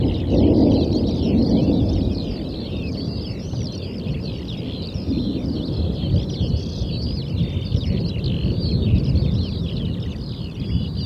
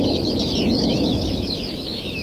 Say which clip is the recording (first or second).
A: first